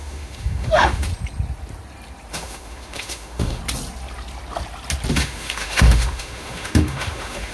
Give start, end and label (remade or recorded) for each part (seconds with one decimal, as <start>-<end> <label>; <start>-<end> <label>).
0.0-1.1 remade; 1.1-2.3 recorded; 2.3-3.6 remade; 3.6-5.1 recorded; 5.1-7.5 remade